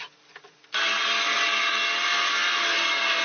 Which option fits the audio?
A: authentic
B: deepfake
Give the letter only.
A